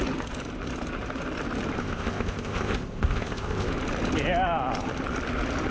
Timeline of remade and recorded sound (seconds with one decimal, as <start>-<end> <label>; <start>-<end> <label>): 0.0-1.8 recorded; 1.8-3.7 remade; 3.7-5.7 recorded

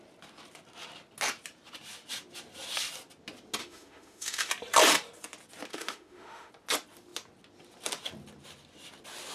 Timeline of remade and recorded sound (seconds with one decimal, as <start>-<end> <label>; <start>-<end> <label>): 0.0-3.6 recorded; 3.6-4.5 remade; 4.5-5.7 recorded; 5.7-6.5 remade; 6.5-9.3 recorded

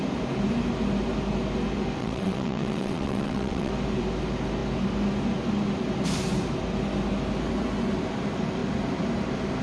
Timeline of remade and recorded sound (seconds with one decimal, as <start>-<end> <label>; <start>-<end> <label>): 0.0-2.0 recorded; 2.0-3.7 remade; 3.7-9.6 recorded